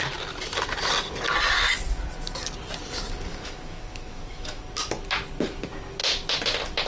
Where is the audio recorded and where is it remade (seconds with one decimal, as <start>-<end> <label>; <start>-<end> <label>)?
0.0-3.3 recorded; 3.3-4.6 remade; 4.6-6.9 recorded